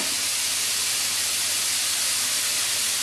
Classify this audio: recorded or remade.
recorded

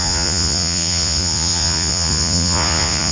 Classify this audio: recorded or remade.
remade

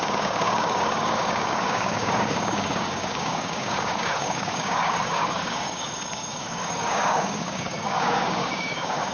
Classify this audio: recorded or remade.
remade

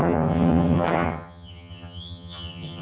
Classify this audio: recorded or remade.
remade